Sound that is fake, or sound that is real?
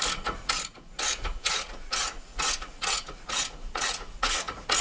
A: fake